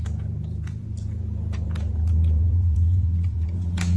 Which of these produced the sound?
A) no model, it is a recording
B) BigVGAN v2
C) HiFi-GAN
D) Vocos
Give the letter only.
D